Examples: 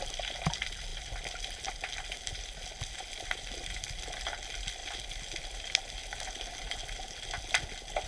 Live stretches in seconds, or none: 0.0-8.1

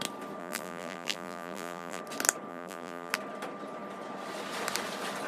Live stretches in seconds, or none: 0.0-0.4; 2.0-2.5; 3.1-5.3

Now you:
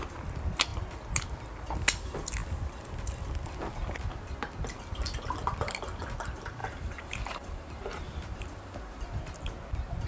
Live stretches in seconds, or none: 0.0-6.6; 9.4-10.1